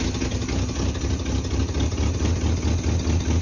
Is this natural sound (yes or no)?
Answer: yes